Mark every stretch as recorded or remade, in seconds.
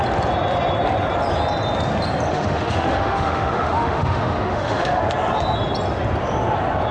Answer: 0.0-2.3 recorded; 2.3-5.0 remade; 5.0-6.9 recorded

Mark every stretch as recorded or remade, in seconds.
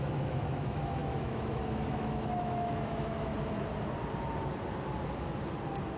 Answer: 0.0-3.3 remade; 3.3-6.0 recorded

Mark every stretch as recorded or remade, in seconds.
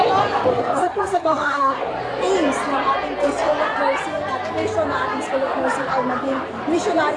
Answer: 0.0-0.5 recorded; 0.5-1.9 remade; 1.9-7.2 recorded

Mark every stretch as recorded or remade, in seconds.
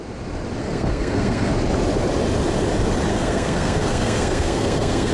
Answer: 0.0-0.6 recorded; 0.6-1.5 remade; 1.5-3.1 recorded; 3.1-5.1 remade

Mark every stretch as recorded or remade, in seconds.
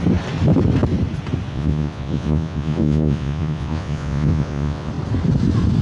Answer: 0.0-1.5 recorded; 1.5-4.9 remade; 4.9-5.8 recorded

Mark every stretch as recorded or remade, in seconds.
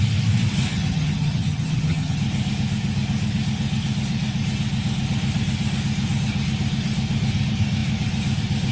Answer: 0.0-0.7 recorded; 0.7-2.2 remade; 2.2-8.7 recorded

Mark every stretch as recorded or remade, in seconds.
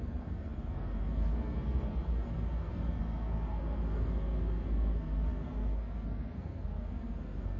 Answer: 0.0-7.6 remade